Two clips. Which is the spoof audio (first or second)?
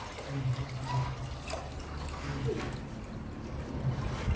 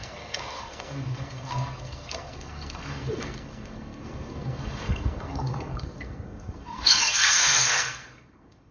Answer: second